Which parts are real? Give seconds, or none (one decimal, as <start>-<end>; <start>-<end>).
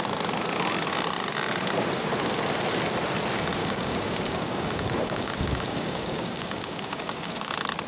0.0-3.6; 7.5-7.9